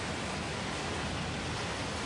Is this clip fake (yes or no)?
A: no